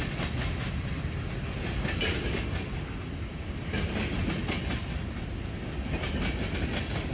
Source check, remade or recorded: recorded